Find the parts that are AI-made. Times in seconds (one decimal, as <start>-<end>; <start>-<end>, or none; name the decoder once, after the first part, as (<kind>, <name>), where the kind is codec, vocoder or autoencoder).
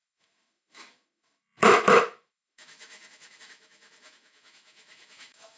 0.0-5.6 (autoencoder, DAC-VAE)